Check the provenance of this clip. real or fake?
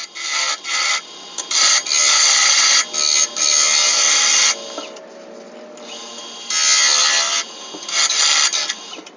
real